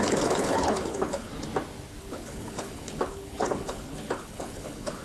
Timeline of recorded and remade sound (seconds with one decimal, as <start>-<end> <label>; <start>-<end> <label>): 0.0-1.3 remade; 1.3-2.0 recorded; 2.0-5.0 remade